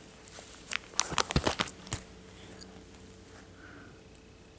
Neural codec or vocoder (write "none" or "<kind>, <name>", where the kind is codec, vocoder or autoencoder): none